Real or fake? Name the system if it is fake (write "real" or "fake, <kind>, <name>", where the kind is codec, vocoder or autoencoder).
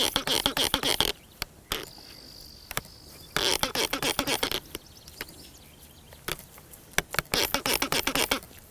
real